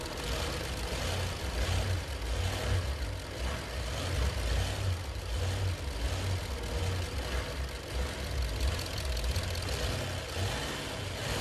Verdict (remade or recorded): recorded